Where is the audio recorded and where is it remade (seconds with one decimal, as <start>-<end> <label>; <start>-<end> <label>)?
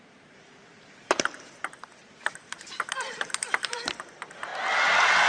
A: 0.0-0.5 remade; 0.5-2.7 recorded; 2.7-4.5 remade; 4.5-5.3 recorded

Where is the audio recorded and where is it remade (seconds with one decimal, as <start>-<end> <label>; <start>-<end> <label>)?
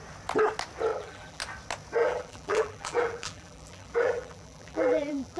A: 0.0-0.9 recorded; 0.9-1.4 remade; 1.4-2.0 recorded; 2.0-5.4 remade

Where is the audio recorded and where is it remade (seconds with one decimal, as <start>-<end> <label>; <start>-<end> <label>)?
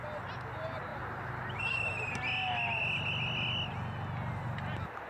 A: 0.0-5.1 recorded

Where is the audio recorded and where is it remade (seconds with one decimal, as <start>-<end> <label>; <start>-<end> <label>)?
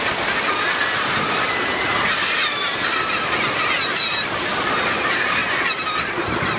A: 0.0-0.8 remade; 0.8-4.0 recorded; 4.0-5.4 remade; 5.4-6.6 recorded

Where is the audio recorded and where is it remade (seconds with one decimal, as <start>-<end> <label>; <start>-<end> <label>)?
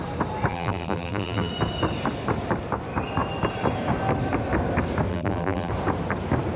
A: 0.0-0.5 recorded; 0.5-1.5 remade; 1.5-5.1 recorded; 5.1-5.7 remade; 5.7-6.6 recorded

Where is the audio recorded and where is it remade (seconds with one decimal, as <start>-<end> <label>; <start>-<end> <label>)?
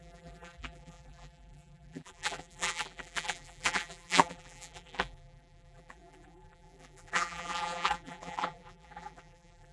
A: 0.0-9.7 remade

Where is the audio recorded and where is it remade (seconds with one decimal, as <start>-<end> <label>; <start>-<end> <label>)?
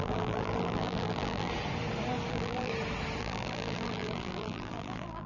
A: 0.0-1.5 remade; 1.5-2.3 recorded; 2.3-2.7 remade; 2.7-3.2 recorded; 3.2-5.3 remade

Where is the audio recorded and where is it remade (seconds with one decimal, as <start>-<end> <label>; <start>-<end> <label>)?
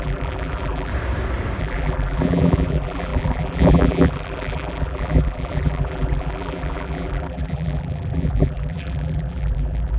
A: 0.0-0.9 remade; 0.9-1.6 recorded; 1.6-10.0 remade